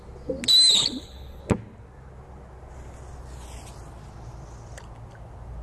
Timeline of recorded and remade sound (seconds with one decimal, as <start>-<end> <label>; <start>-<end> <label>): 0.0-0.8 recorded; 0.8-1.4 remade; 1.4-5.6 recorded